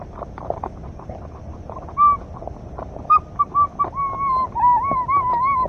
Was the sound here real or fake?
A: real